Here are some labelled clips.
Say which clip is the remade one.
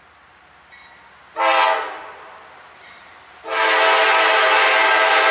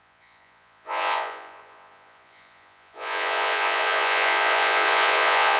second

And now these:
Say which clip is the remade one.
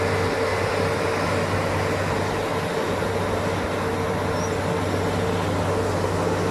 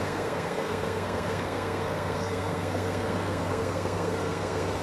second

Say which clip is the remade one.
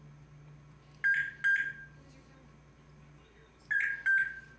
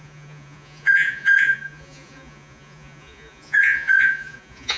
second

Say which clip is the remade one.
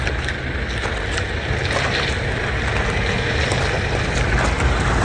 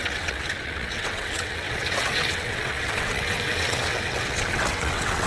second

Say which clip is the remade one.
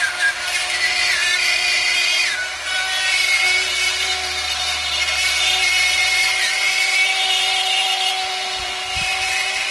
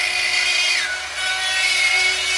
first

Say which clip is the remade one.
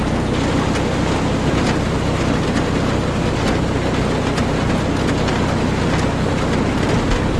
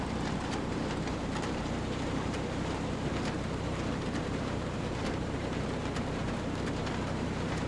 second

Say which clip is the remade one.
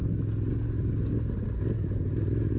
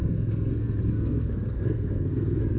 second